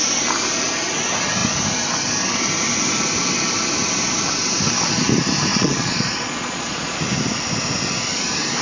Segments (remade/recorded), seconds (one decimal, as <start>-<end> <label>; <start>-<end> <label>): 0.0-5.5 recorded; 5.5-7.0 remade; 7.0-8.6 recorded